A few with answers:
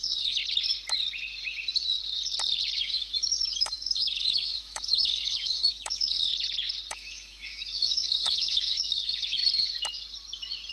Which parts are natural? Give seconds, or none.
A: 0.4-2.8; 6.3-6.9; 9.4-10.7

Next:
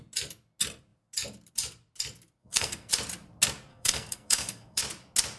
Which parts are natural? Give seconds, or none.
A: 0.0-2.4; 2.9-3.7; 4.8-5.4